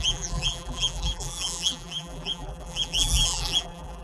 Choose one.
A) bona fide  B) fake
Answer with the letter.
B